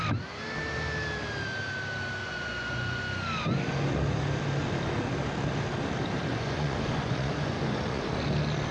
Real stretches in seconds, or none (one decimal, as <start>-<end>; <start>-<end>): 0.0-2.2; 3.0-6.3; 8.0-8.7